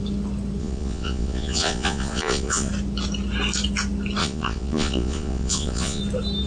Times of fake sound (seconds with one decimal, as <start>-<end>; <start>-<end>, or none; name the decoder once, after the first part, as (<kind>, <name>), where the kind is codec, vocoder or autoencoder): 0.6-2.7 (vocoder, Vocos); 4.2-6.0

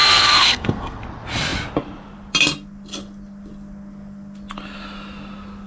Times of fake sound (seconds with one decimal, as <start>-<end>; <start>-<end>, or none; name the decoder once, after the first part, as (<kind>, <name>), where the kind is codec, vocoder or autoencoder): 0.0-1.0 (codec, SNAC)

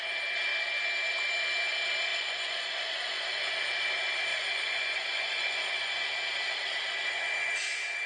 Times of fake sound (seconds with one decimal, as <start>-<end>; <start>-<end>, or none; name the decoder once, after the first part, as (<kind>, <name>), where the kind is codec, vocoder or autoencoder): 2.1-3.3 (vocoder, Vocos); 4.3-6.1

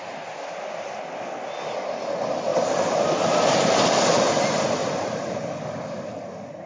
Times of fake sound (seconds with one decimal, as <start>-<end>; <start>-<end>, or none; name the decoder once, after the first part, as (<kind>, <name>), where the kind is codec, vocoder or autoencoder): 2.5-3.9 (vocoder, BigVGAN v2); 4.8-5.4

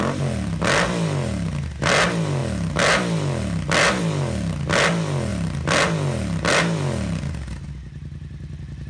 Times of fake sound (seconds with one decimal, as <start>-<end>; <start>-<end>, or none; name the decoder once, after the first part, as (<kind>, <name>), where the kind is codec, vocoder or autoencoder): none